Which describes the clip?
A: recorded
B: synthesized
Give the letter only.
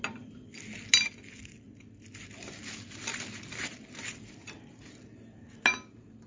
A